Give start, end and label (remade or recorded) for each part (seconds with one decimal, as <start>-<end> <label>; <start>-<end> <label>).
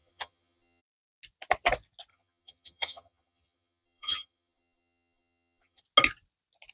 0.0-0.8 remade; 0.8-2.1 recorded; 2.1-5.8 remade; 5.8-6.7 recorded